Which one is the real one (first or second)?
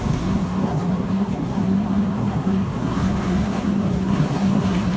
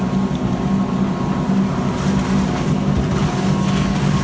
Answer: second